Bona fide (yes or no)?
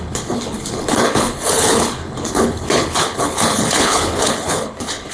no